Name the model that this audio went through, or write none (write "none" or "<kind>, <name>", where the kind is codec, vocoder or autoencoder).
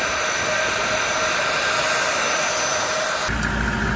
none